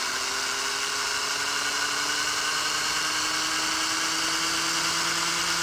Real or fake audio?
real